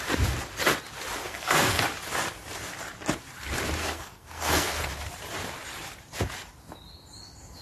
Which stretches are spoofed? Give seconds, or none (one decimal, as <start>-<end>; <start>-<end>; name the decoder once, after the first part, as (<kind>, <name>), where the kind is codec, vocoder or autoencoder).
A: 1.2-1.8 (codec, SNAC); 3.8-4.9